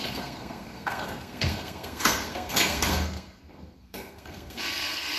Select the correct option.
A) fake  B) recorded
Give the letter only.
A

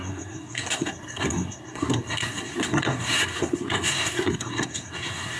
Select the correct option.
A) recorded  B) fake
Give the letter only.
B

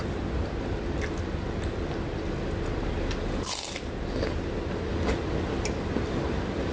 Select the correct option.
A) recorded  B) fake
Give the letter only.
A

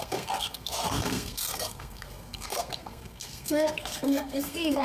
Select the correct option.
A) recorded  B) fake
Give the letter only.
B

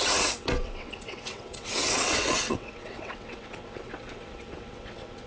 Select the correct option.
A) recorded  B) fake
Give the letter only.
B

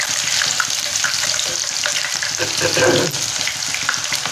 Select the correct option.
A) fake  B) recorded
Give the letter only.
B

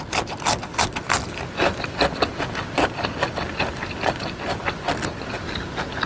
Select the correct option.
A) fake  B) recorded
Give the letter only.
B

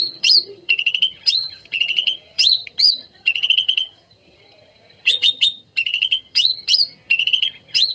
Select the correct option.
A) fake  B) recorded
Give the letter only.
A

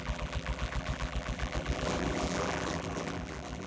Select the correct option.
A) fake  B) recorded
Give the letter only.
A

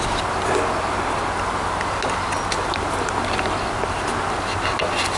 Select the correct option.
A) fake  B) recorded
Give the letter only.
B